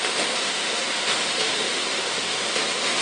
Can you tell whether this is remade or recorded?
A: remade